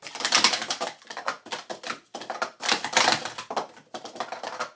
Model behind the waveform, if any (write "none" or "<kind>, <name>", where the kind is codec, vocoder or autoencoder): none